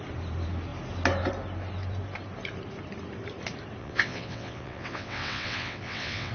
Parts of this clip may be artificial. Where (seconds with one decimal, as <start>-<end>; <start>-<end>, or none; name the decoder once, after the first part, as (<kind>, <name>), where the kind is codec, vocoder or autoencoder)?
3.8-6.3 (vocoder, WaveNeXt)